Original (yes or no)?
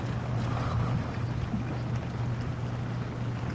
yes